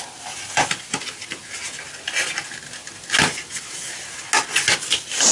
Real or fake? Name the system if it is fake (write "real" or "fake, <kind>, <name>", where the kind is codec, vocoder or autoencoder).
real